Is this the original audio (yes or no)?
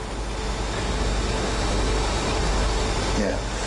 yes